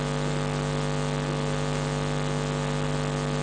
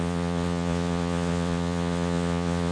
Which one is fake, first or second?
second